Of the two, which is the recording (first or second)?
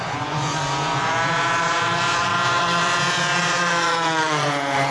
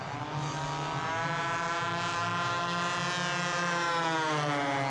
second